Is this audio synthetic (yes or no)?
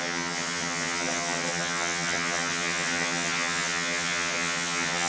yes